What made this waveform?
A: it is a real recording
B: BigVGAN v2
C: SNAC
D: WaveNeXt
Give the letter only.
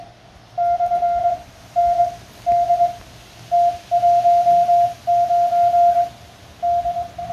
A